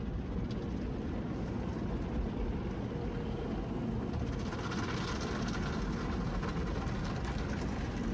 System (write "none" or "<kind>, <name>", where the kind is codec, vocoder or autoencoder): none